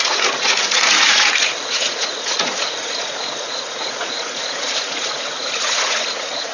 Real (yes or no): no